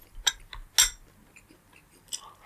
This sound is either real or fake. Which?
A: real